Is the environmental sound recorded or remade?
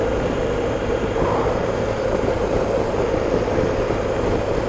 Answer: remade